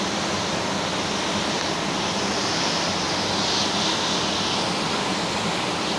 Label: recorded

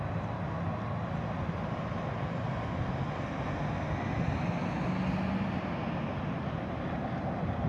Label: recorded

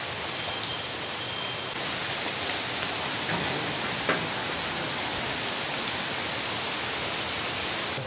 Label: recorded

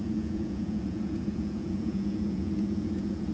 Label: remade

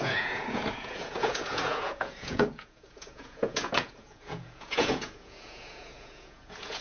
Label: remade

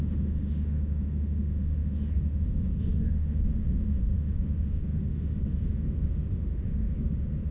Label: remade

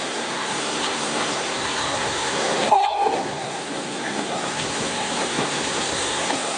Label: remade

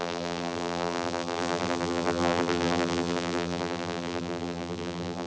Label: remade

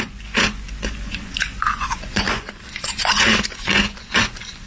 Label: remade